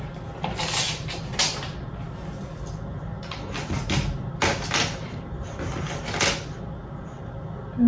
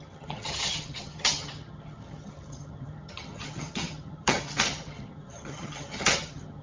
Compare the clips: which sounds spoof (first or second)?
second